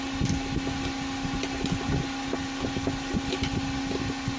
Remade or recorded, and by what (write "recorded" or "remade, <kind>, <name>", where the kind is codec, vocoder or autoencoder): recorded